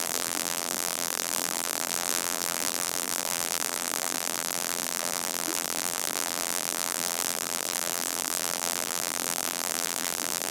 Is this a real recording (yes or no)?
no